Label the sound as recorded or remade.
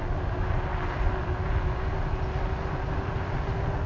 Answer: recorded